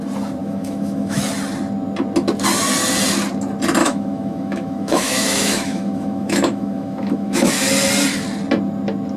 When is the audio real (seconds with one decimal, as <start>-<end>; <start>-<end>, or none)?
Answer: 0.0-0.4; 1.2-3.8; 7.5-9.2